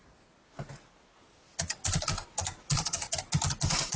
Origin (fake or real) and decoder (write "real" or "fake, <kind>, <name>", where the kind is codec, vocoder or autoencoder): real